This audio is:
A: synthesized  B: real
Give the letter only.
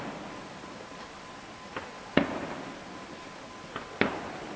B